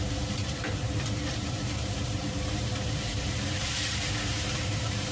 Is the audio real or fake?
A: fake